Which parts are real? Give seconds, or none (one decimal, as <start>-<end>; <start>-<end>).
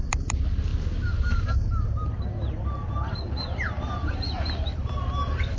0.0-5.6